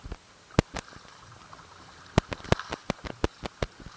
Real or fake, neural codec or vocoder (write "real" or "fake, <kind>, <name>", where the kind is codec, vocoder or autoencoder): real